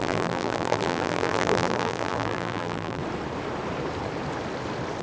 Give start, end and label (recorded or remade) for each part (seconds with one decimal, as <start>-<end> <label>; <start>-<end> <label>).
0.0-3.0 remade; 3.0-5.0 recorded